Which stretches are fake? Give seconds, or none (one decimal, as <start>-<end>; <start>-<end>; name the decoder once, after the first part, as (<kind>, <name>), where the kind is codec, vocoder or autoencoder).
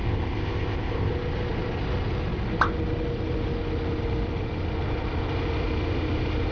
0.0-1.1 (codec, ZipCodec)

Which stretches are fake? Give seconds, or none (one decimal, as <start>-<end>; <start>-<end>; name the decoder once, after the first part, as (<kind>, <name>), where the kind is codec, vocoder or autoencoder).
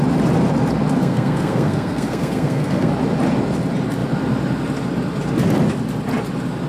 1.0-2.9 (codec, SNAC)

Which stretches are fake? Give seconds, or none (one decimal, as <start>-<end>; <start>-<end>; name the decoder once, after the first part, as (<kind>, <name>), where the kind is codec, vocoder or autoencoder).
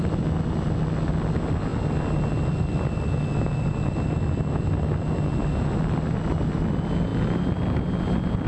none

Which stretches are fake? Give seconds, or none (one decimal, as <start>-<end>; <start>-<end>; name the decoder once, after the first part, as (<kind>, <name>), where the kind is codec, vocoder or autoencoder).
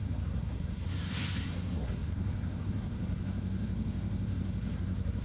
0.0-5.2 (codec, SNAC)